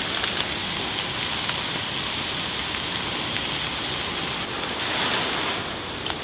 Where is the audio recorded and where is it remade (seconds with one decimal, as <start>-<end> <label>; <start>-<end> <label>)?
0.0-6.2 recorded